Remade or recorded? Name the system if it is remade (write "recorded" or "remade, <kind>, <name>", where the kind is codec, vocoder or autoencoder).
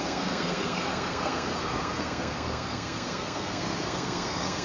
remade, codec, SNAC